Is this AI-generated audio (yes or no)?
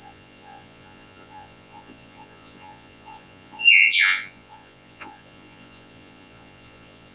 yes